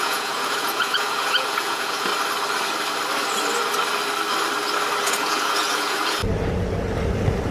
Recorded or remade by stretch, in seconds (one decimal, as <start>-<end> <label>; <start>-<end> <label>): 0.0-2.1 remade; 2.1-5.0 recorded; 5.0-6.2 remade; 6.2-7.5 recorded